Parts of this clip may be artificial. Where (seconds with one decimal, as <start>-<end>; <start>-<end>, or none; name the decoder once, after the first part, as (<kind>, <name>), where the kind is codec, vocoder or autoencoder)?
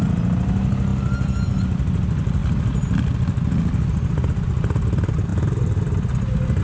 none